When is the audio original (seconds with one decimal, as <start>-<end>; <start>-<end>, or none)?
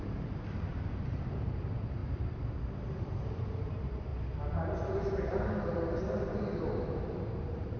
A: 2.0-2.9; 4.1-4.9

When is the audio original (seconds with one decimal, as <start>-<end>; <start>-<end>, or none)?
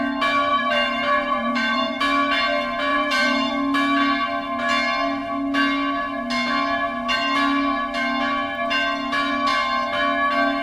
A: 0.0-0.5; 2.0-2.9; 3.5-10.6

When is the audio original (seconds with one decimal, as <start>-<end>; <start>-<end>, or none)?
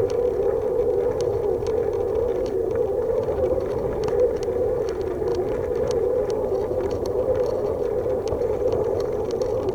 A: 0.0-2.3; 3.7-9.7